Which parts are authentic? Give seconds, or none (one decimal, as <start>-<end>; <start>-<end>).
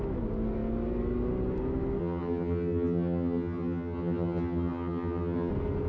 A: 0.0-2.0; 5.5-5.9